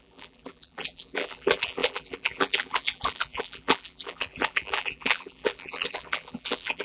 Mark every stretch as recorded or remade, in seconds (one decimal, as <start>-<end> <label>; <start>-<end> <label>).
0.0-6.8 remade